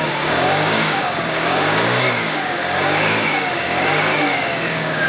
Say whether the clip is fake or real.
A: fake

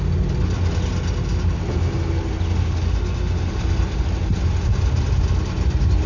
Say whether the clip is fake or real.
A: real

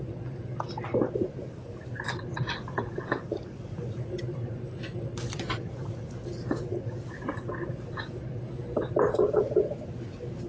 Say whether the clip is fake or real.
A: real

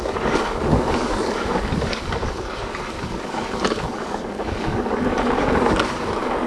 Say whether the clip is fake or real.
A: fake